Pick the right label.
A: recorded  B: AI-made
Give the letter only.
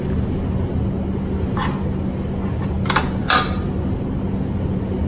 A